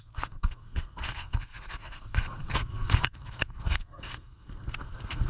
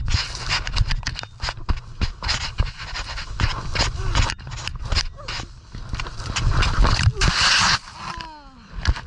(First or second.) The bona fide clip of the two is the second